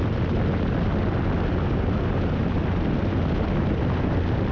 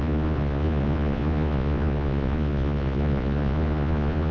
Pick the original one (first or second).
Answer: first